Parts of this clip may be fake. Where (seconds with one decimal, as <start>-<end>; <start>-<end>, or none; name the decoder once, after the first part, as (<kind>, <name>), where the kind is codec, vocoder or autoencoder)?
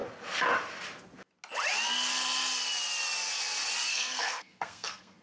3.9-5.2 (codec, SNAC)